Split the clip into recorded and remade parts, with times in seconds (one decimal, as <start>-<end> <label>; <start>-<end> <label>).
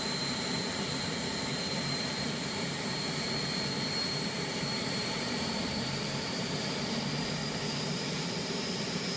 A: 0.0-7.4 remade; 7.4-8.1 recorded; 8.1-9.2 remade